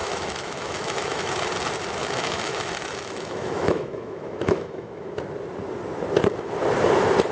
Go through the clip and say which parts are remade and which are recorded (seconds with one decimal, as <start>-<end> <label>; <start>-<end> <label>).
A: 0.0-1.3 remade; 1.3-2.0 recorded; 2.0-5.2 remade; 5.2-7.3 recorded